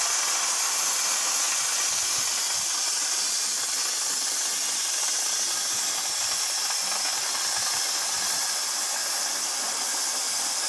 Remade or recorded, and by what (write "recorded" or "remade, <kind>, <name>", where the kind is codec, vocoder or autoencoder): recorded